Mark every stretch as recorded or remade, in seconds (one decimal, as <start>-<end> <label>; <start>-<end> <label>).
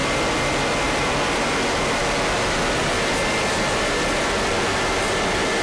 0.0-5.6 recorded